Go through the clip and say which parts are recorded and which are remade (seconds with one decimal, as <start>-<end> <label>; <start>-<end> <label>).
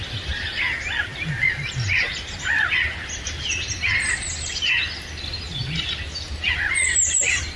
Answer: 0.0-7.6 recorded